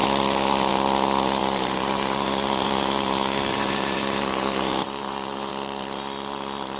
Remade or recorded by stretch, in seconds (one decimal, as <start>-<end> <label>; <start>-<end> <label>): 0.0-1.4 recorded; 1.4-5.5 remade; 5.5-6.8 recorded

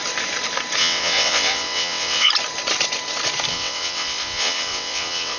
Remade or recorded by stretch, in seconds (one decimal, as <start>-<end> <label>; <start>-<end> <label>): 0.0-0.8 recorded; 0.8-2.3 remade; 2.3-3.5 recorded; 3.5-5.4 remade